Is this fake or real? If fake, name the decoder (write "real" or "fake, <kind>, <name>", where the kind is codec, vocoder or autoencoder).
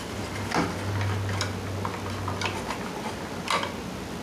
real